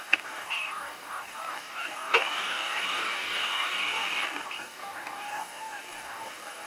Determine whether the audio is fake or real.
fake